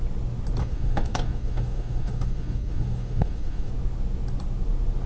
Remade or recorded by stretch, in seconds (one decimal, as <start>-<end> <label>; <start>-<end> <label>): 0.0-0.6 recorded; 0.6-3.7 remade; 3.7-5.1 recorded